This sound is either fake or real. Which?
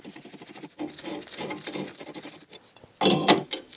real